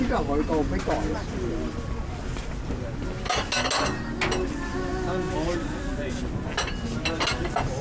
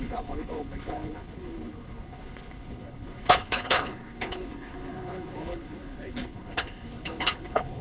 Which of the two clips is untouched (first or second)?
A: first